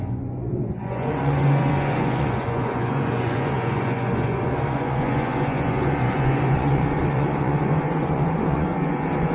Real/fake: fake